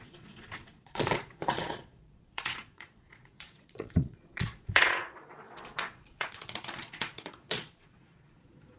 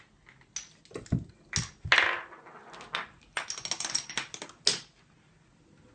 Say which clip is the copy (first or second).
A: first